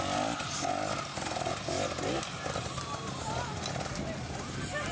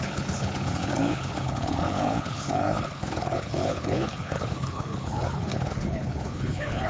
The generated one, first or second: second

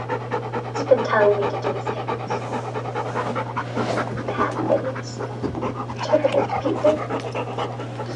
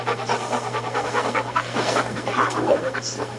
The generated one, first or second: second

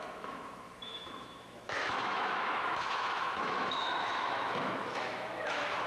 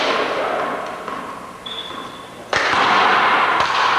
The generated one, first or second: first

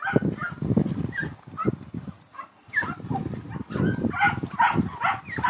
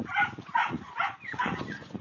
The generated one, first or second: second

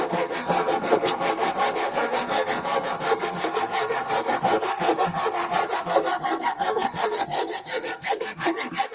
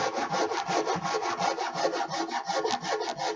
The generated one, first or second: first